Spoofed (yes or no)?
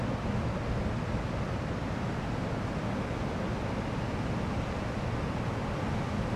no